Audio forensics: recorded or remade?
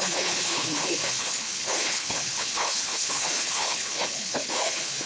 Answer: remade